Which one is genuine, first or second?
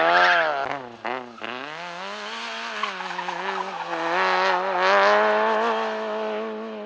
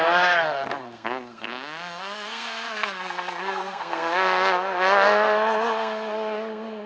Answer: first